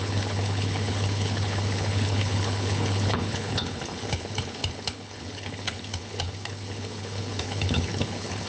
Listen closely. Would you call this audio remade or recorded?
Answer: remade